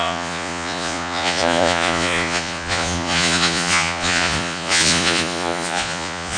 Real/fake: fake